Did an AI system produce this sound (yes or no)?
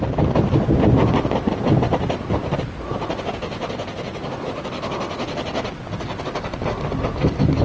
no